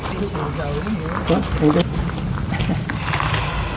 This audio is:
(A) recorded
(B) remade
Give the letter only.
A